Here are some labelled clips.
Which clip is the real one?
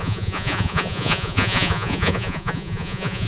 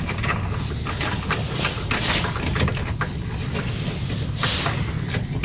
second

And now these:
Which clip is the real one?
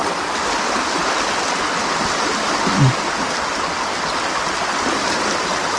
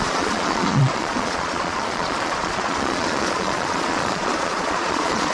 first